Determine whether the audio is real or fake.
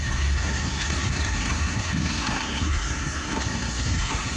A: fake